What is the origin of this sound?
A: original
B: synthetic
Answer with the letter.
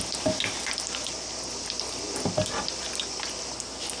A